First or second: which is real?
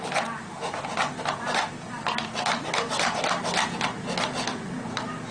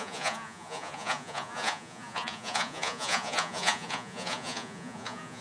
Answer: first